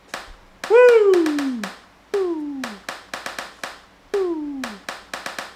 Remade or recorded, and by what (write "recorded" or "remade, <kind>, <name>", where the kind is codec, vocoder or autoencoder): recorded